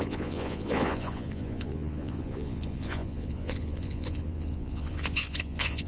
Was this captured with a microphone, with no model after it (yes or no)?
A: no